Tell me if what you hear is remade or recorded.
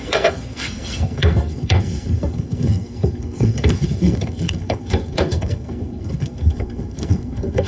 remade